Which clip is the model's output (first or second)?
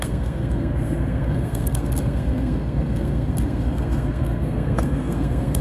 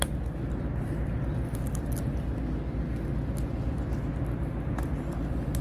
first